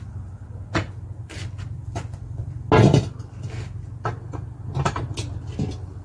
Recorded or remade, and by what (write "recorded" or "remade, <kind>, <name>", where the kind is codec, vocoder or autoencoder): recorded